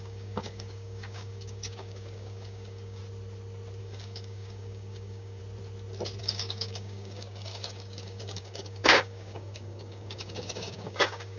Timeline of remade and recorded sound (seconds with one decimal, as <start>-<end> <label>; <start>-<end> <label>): 0.0-3.0 remade; 3.0-3.8 recorded; 3.8-5.4 remade; 5.4-6.2 recorded; 6.2-11.4 remade